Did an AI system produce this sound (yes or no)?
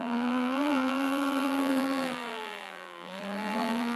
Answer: yes